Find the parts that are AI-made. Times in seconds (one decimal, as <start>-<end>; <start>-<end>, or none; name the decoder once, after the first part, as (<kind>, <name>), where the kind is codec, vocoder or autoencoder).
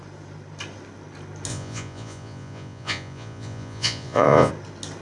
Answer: 1.5-4.5 (vocoder, Vocos)